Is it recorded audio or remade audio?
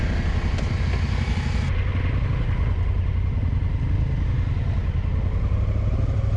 recorded